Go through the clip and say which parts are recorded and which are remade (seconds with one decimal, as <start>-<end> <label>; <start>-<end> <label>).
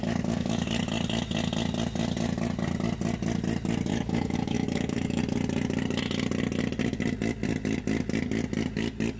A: 0.0-0.8 remade; 0.8-3.9 recorded; 3.9-5.2 remade; 5.2-9.2 recorded